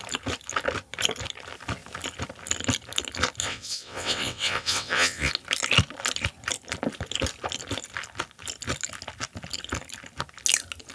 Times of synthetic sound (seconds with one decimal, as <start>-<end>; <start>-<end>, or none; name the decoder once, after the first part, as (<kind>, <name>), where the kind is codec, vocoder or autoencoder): 3.4-5.3 (vocoder, WaveNeXt)

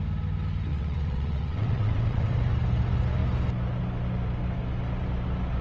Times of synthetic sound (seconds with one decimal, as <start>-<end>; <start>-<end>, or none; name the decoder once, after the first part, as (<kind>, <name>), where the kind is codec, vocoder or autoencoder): 0.7-2.3 (vocoder, WaveNeXt)

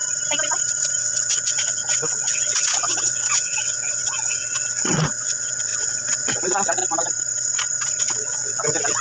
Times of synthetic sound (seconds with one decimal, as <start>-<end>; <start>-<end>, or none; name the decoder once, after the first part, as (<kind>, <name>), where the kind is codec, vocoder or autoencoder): 1.0-6.8 (vocoder, WaveNeXt); 8.0-9.0

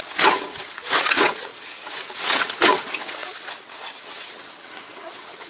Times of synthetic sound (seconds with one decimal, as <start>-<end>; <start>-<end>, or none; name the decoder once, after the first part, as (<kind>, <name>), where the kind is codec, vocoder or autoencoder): 0.0-5.5 (vocoder, WaveNeXt)